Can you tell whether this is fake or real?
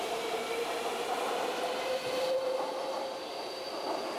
fake